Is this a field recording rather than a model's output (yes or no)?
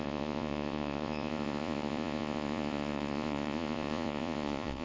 no